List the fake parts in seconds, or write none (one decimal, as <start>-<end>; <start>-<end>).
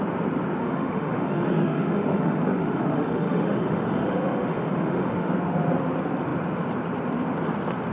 0.6-5.3